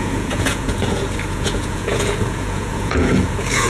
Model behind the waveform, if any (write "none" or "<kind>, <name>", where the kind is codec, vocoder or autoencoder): vocoder, Vocos